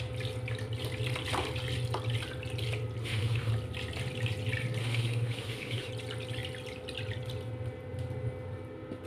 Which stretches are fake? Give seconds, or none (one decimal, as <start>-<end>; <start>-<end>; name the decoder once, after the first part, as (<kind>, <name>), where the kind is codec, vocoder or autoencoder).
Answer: 3.0-3.5 (autoencoder, DAC-VAE); 4.8-5.9